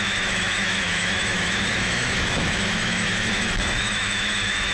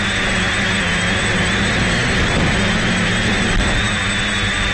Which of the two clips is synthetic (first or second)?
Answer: first